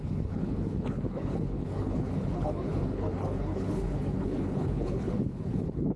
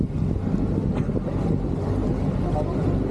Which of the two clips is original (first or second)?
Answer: second